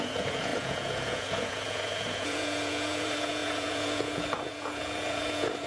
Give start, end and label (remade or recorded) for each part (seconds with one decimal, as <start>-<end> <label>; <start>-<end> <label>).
0.0-5.7 remade